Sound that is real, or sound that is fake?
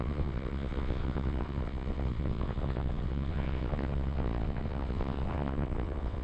fake